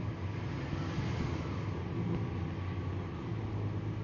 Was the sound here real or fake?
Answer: real